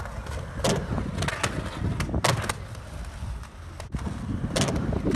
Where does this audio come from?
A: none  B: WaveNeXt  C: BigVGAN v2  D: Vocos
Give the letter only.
A